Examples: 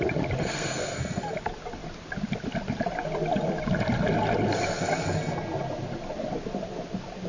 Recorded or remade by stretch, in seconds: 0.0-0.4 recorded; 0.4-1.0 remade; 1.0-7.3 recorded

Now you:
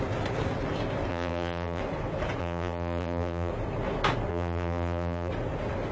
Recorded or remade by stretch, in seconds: 0.0-1.1 recorded; 1.1-1.8 remade; 1.8-2.4 recorded; 2.4-3.5 remade; 3.5-4.3 recorded; 4.3-5.3 remade; 5.3-5.9 recorded

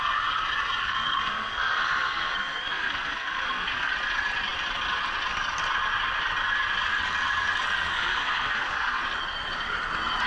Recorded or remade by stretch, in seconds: 0.0-0.8 recorded; 0.8-3.9 remade; 3.9-7.9 recorded; 7.9-9.0 remade; 9.0-10.3 recorded

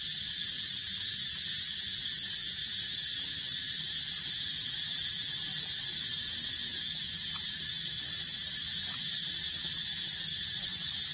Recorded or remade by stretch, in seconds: 0.0-11.1 recorded

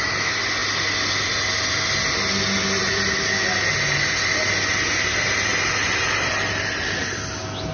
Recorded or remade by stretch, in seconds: 0.0-7.7 recorded

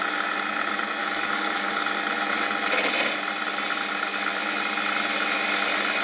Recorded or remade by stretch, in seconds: 0.0-1.0 recorded; 1.0-1.7 remade; 1.7-4.1 recorded; 4.1-4.6 remade; 4.6-6.0 recorded

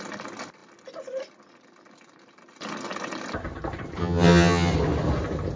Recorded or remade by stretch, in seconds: 0.0-4.0 recorded; 4.0-4.7 remade; 4.7-5.6 recorded